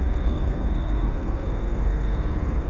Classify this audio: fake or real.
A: fake